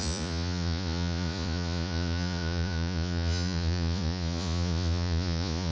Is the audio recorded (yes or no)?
no